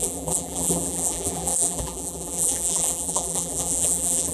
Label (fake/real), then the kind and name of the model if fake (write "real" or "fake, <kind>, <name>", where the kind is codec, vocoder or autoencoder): fake, vocoder, BigVGAN v2